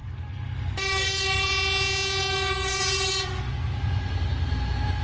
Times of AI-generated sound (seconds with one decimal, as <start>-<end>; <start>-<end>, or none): 0.0-1.5; 2.2-2.8